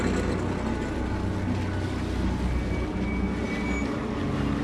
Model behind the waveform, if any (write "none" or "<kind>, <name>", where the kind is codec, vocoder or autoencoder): none